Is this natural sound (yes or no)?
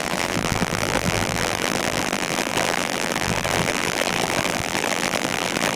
no